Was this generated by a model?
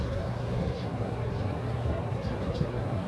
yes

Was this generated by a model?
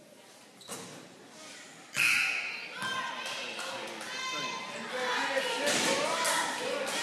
no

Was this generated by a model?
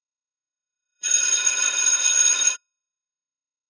yes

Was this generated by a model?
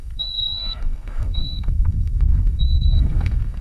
yes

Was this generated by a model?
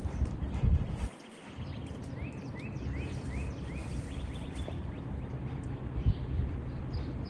no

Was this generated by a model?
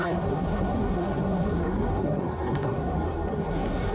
yes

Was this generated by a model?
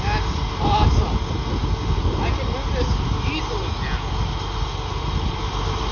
no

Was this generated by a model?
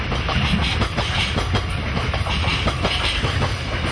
no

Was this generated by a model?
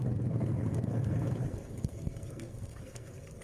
yes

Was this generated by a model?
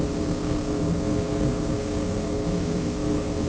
yes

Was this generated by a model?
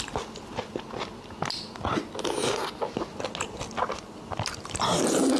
no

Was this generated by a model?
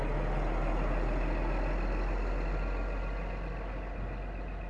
no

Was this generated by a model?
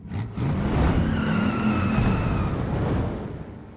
no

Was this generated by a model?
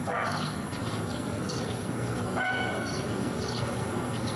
yes